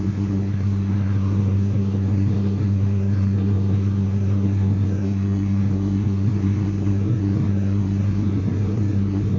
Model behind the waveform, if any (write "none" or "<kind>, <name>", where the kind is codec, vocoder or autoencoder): codec, SNAC